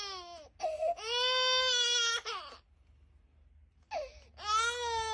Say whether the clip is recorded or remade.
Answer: recorded